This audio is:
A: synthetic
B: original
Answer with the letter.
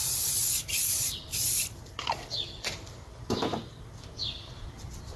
A